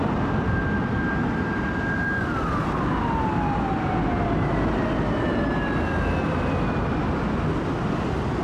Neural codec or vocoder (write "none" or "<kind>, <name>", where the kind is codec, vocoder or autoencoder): none